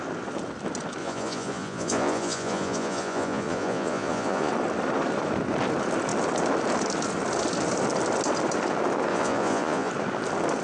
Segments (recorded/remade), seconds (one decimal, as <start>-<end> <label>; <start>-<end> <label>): 0.0-1.0 recorded; 1.0-4.5 remade; 4.5-9.1 recorded; 9.1-9.9 remade; 9.9-10.6 recorded